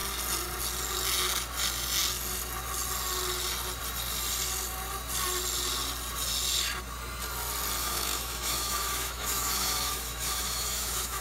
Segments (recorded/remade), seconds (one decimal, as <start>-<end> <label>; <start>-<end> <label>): 0.0-7.8 recorded; 7.8-11.2 remade